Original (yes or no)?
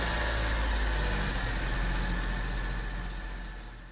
yes